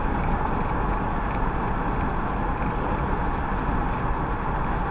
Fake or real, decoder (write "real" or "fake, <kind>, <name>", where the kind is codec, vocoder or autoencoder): real